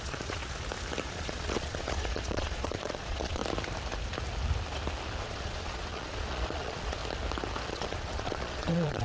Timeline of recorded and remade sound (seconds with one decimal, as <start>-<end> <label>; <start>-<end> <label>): 0.0-0.4 remade; 0.4-1.1 recorded; 1.1-3.4 remade; 3.4-5.2 recorded; 5.2-7.0 remade; 7.0-7.7 recorded; 7.7-9.0 remade